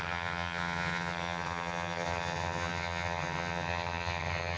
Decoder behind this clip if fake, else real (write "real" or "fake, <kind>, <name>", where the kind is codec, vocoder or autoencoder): fake, vocoder, HiFi-GAN